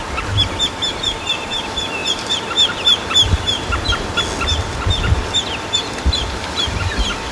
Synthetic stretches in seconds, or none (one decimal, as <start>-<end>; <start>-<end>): 0.0-0.5